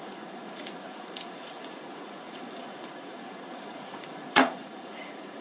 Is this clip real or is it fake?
fake